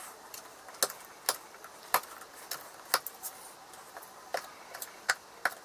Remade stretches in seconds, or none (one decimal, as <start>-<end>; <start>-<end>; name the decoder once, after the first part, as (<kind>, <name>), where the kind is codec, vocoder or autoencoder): none